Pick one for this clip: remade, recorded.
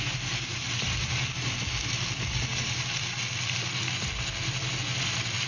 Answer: recorded